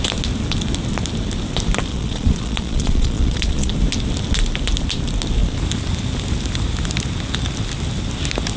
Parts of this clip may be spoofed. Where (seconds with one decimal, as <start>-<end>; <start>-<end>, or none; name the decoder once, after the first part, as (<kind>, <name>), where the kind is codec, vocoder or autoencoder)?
1.9-3.7 (vocoder, Vocos)

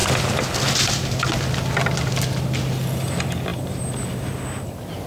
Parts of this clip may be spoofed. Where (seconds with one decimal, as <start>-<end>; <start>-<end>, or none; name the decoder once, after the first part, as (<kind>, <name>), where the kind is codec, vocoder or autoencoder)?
none

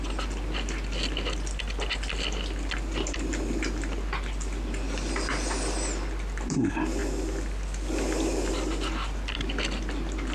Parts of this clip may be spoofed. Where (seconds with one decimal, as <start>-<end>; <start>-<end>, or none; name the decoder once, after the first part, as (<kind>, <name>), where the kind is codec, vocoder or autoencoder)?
none